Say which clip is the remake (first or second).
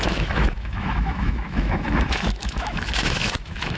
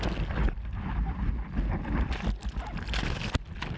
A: first